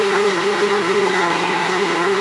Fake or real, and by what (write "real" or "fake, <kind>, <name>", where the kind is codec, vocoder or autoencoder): fake, codec, SNAC